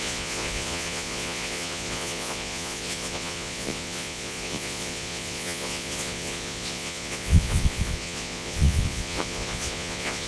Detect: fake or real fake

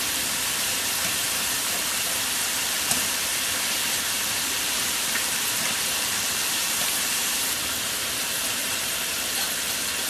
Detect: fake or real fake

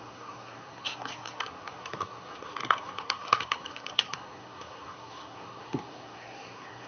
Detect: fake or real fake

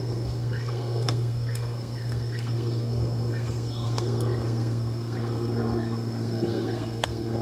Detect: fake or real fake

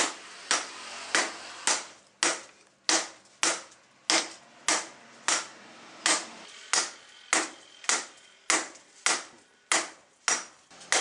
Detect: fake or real real